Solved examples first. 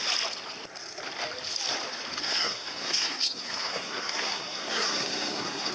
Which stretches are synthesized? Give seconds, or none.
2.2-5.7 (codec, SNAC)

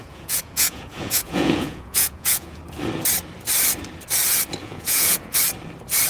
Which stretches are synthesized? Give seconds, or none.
0.0-2.6 (vocoder, Vocos); 4.6-5.4

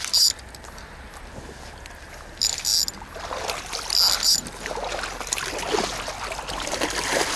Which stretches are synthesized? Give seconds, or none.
none

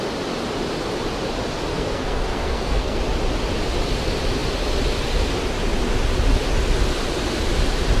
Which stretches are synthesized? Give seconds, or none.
1.7-3.0 (codec, SNAC)